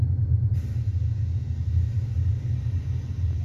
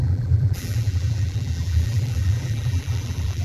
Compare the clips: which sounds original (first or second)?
first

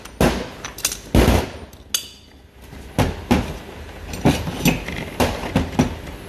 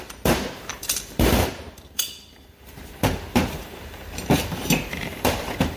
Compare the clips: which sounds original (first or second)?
first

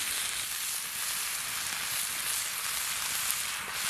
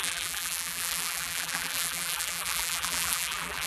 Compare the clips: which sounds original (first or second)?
first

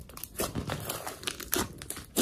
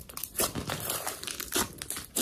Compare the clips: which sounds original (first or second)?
first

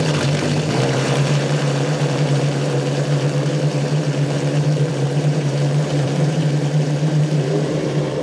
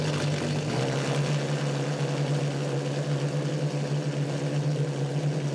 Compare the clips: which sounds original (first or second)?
second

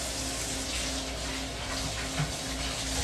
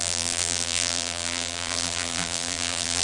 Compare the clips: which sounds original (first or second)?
first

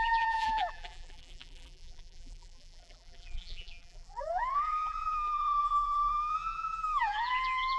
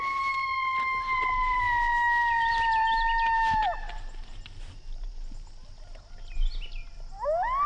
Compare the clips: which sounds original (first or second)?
second